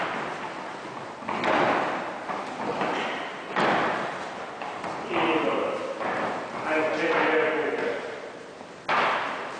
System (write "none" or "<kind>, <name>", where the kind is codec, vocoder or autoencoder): none